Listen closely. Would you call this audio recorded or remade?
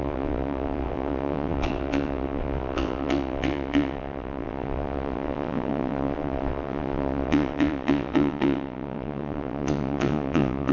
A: remade